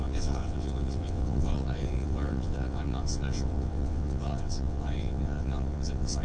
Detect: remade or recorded remade